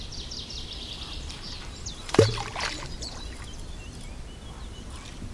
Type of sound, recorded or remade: recorded